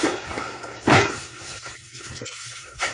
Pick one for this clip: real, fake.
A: fake